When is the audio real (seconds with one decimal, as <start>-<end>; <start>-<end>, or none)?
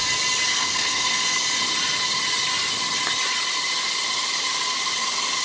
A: 0.0-0.5; 1.4-5.4